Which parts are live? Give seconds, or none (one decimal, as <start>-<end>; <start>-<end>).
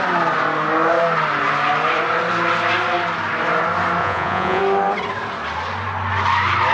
0.0-4.0; 4.6-6.7